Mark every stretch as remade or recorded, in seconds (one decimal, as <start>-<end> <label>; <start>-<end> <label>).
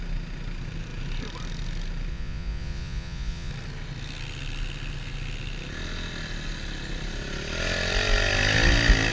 0.0-2.1 recorded; 2.1-3.5 remade; 3.5-9.1 recorded